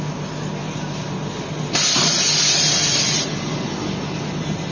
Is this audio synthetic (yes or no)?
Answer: no